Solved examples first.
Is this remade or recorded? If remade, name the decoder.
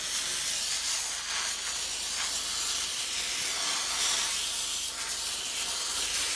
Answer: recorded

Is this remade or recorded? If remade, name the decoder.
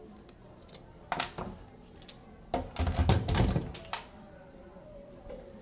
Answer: recorded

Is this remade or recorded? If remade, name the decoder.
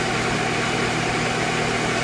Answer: recorded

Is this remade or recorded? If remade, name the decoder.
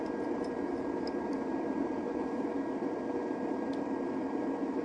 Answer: remade, vocoder, BigVGAN v2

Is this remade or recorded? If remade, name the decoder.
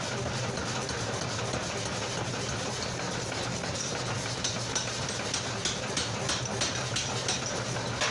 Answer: recorded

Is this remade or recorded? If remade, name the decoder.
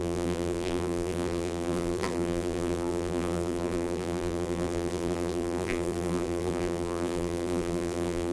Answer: remade, vocoder, BigVGAN v2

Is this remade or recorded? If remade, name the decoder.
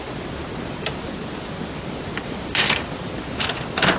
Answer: recorded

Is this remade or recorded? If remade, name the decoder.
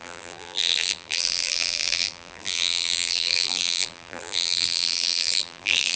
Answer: remade, vocoder, BigVGAN v2